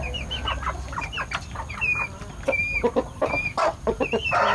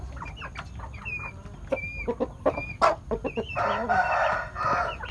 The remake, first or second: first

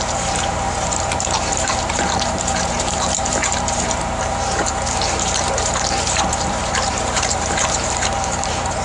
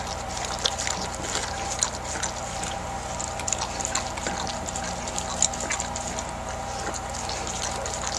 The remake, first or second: first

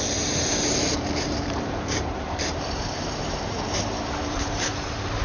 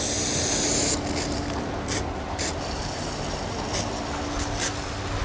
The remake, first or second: first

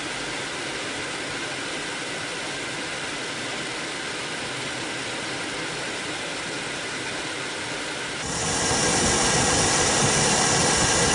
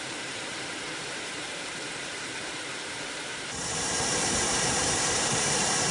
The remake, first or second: second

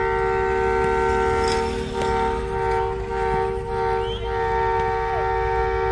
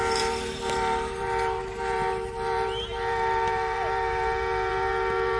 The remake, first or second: second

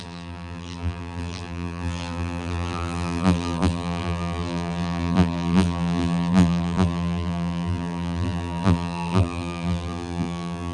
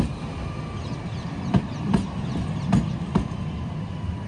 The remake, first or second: first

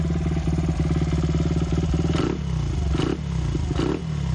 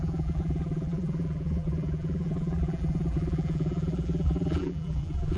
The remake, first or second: second